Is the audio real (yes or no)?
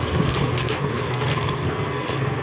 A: no